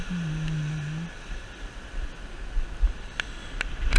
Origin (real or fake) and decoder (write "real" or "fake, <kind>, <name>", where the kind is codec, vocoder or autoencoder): real